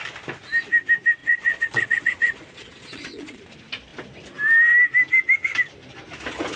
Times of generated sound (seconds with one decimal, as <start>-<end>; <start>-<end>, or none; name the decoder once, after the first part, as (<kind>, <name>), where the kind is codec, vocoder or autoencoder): 1.2-3.4 (vocoder, Vocos)